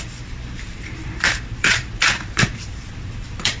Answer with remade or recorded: remade